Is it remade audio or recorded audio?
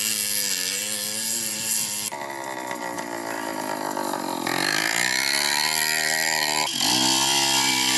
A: remade